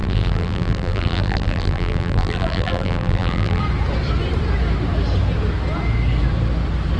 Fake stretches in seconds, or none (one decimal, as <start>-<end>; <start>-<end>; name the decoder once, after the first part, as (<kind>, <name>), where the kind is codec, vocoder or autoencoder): 0.0-3.6 (vocoder, BigVGAN v2)